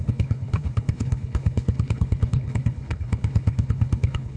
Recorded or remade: remade